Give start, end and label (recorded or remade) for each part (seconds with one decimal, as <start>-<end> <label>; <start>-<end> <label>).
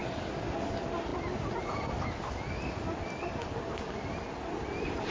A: 0.0-5.1 recorded